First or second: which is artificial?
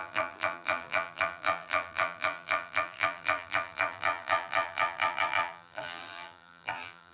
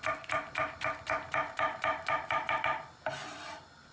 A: first